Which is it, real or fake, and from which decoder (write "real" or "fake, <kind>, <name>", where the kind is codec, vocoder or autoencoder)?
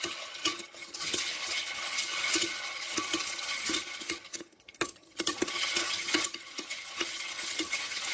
fake, vocoder, HiFi-GAN